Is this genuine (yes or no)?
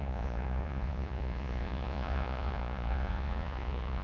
no